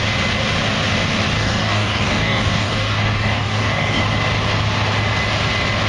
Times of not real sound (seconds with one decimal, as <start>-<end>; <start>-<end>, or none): 1.4-4.0